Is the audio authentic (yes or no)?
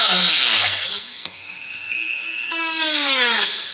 no